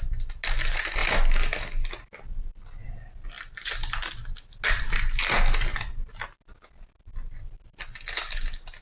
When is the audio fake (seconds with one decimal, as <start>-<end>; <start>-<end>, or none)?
none